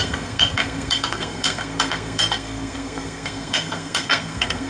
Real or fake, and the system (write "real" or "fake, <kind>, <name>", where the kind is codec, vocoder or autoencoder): fake, codec, SNAC